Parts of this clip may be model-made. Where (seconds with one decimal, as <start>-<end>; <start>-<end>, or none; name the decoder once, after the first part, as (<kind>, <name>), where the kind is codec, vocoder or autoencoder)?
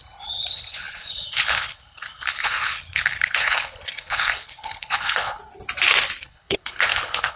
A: 0.0-5.4 (codec, HILCodec); 6.2-7.4